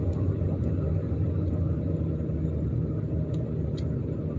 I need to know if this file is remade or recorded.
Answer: recorded